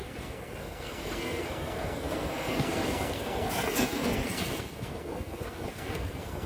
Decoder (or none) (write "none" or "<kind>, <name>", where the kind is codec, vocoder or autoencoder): codec, SNAC